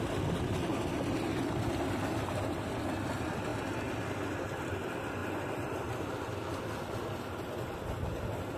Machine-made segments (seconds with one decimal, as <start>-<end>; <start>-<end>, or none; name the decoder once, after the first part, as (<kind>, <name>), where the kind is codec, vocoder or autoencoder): none